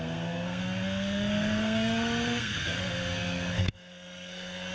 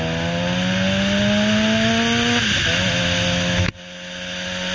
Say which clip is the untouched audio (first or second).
second